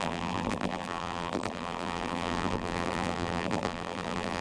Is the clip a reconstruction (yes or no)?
yes